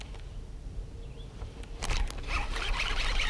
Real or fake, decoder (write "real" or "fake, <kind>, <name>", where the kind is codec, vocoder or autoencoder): real